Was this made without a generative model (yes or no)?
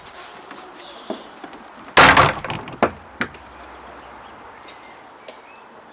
yes